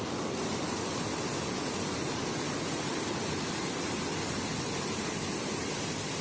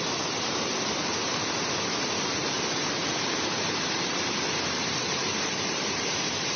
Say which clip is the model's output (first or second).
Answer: second